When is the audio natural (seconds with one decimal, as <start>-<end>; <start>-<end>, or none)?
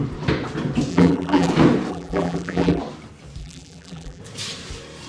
0.0-0.9; 1.5-1.9; 2.8-3.4; 4.2-5.1